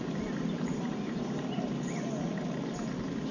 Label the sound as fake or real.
real